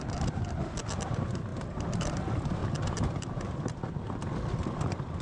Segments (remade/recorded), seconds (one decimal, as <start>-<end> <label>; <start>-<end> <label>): 0.0-1.5 recorded; 1.5-2.1 remade; 2.1-2.6 recorded; 2.6-4.3 remade; 4.3-5.2 recorded